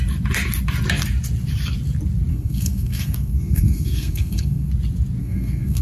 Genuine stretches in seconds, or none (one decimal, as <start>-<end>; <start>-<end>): 0.0-2.3; 4.7-5.2